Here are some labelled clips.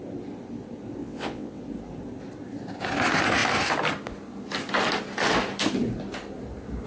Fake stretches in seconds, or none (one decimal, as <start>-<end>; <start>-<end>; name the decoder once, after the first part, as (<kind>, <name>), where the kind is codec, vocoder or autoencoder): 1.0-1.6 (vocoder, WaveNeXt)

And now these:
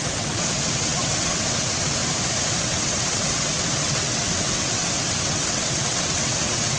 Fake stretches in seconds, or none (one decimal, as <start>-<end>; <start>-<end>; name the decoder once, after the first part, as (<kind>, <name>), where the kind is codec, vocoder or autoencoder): 0.0-2.0 (vocoder, WaveNeXt); 2.6-6.8

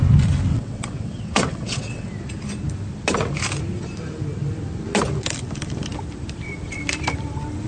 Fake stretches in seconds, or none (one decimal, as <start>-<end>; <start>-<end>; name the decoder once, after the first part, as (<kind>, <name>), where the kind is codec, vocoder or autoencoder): 0.5-2.1 (vocoder, WaveNeXt)

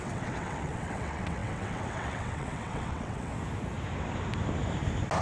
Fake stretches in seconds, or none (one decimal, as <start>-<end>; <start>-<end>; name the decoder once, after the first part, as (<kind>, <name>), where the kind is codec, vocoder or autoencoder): 0.0-3.3 (vocoder, WaveNeXt)

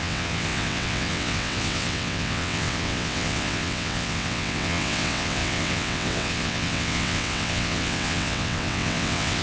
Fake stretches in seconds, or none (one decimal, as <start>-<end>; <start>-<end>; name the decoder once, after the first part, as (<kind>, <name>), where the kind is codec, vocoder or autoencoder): 0.0-9.4 (vocoder, WaveNeXt)